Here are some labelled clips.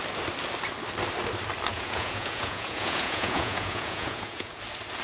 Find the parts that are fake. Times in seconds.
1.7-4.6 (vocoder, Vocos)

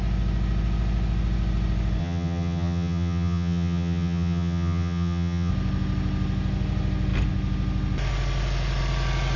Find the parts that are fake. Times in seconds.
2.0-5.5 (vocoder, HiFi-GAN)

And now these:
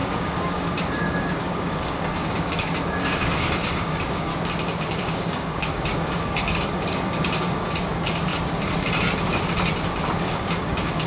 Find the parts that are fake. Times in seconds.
0.0-4.3 (codec, DAC); 4.9-8.3; 10.2-11.1

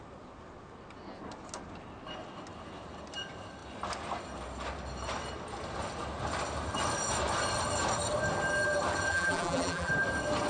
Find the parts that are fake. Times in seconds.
9.1-9.9 (vocoder, BigVGAN v2)